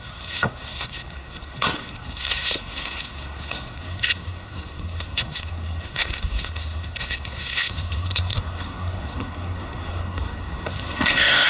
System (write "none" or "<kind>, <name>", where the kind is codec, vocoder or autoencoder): codec, SNAC